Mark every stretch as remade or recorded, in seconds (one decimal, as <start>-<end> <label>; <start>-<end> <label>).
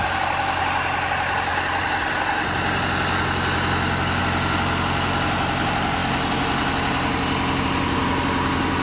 0.0-8.8 recorded